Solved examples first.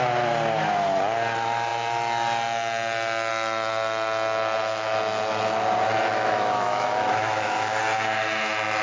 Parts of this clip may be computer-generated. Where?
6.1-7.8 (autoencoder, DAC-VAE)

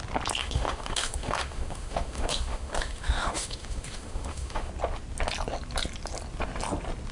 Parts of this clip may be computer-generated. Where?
0.4-4.7 (autoencoder, DAC-VAE)

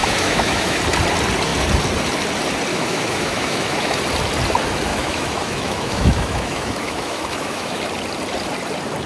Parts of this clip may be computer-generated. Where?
0.0-0.8 (autoencoder, DAC-VAE); 2.7-4.0; 4.9-7.8

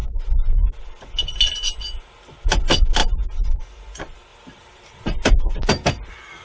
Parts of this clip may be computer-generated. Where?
none

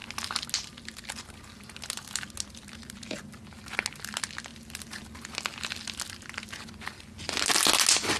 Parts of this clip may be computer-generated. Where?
none

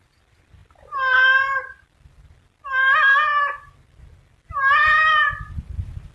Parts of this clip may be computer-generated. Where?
none

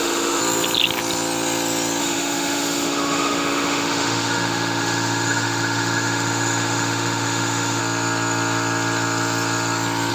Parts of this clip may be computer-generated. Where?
0.0-0.4 (autoencoder, DAC-VAE); 2.0-7.8

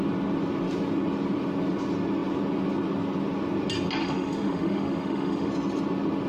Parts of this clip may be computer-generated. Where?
4.0-5.5 (autoencoder, DAC-VAE)